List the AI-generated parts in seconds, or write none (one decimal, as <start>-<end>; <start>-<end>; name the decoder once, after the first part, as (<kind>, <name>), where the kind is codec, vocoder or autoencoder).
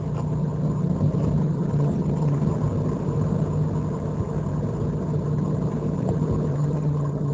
1.4-2.4 (vocoder, HiFi-GAN); 6.5-7.3